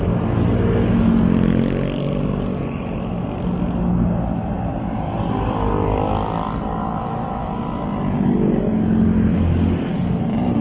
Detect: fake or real real